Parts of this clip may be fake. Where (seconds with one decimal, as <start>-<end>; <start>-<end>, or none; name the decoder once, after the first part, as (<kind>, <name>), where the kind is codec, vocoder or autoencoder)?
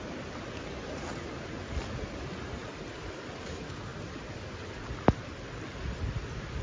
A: none